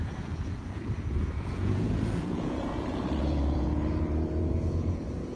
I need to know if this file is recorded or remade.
remade